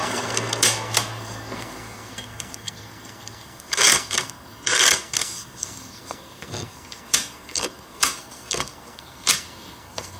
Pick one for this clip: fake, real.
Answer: fake